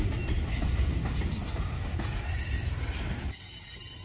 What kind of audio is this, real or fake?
real